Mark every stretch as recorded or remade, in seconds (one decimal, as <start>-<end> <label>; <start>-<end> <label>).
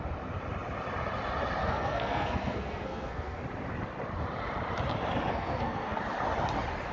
0.0-1.6 recorded; 1.6-3.4 remade; 3.4-5.3 recorded; 5.3-6.0 remade; 6.0-6.9 recorded